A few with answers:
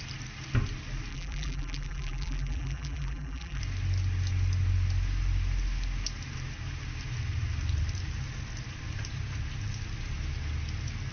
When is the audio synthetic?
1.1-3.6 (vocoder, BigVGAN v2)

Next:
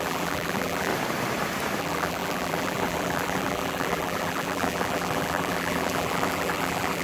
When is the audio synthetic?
0.0-0.9 (vocoder, BigVGAN v2); 1.8-7.0